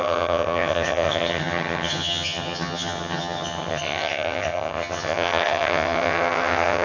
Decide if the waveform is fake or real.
fake